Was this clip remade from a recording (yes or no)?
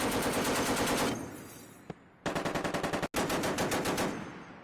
no